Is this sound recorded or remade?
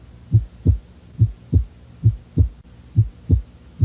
recorded